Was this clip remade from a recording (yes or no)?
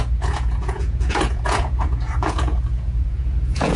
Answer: yes